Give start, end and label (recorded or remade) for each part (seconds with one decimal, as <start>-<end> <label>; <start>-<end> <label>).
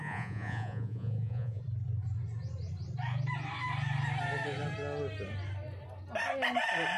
0.0-1.6 remade; 1.6-7.0 recorded